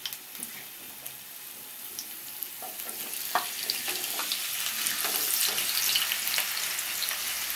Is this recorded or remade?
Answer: recorded